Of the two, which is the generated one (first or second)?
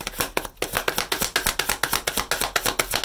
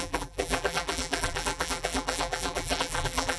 second